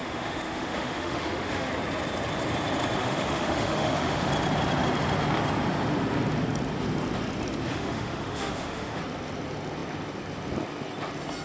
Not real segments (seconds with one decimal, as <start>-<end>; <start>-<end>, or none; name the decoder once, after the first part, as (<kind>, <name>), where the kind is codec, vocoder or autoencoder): 0.0-1.7 (autoencoder, DAC-VAE); 3.0-4.3; 7.7-9.0